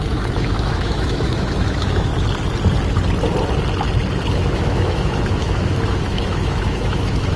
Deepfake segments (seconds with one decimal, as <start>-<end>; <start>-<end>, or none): 0.0-2.1; 4.3-7.4